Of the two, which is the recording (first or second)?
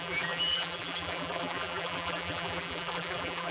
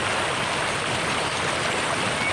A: second